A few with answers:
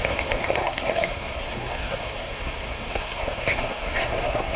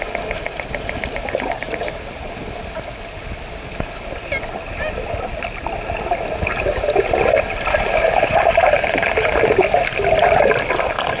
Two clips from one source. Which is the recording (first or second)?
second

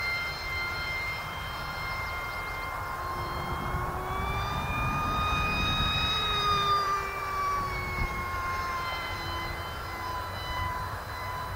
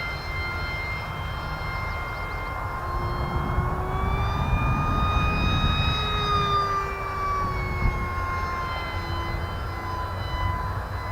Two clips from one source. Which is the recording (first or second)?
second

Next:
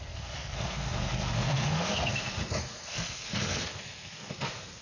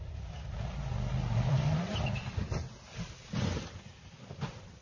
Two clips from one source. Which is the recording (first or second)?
second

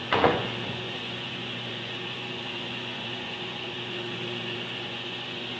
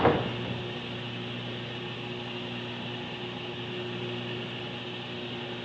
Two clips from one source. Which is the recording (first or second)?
second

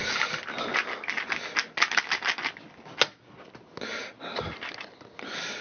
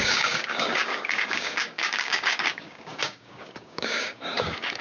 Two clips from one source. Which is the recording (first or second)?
first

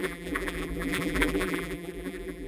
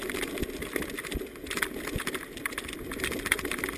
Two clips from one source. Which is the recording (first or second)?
second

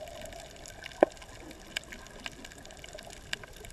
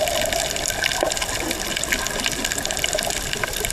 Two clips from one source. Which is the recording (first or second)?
first